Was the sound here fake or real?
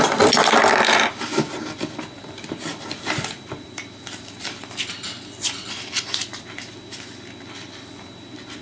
fake